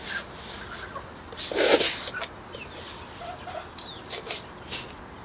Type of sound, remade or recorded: recorded